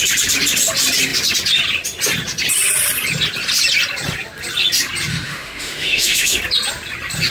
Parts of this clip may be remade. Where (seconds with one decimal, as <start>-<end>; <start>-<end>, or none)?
5.1-6.4